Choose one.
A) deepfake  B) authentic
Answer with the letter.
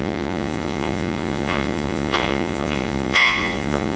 A